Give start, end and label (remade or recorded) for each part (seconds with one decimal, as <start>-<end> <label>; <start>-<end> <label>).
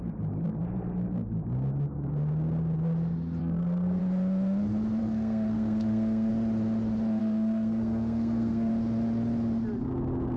0.0-3.4 recorded; 3.4-4.0 remade; 4.0-5.0 recorded; 5.0-6.3 remade; 6.3-7.2 recorded; 7.2-8.7 remade; 8.7-10.4 recorded